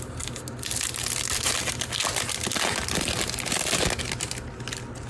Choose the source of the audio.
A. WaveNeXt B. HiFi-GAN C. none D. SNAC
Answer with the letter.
C